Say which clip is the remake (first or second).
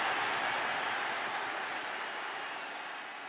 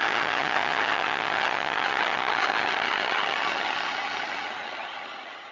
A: second